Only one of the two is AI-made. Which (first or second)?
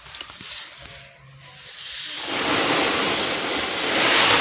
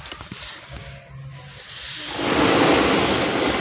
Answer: first